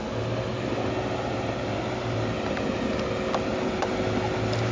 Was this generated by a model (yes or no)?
no